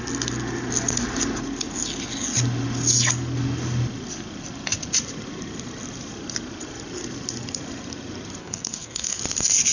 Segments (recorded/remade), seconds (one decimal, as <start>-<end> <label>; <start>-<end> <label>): 0.0-8.4 recorded; 8.4-9.2 remade; 9.2-9.7 recorded